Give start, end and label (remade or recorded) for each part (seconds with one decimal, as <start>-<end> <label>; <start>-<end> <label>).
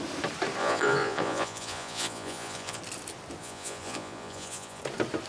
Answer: 0.0-0.6 recorded; 0.6-2.8 remade; 2.8-3.4 recorded; 3.4-4.8 remade; 4.8-5.3 recorded